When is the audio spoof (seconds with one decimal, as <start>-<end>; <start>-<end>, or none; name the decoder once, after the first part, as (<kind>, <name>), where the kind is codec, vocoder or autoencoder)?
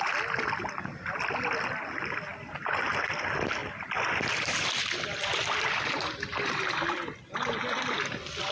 none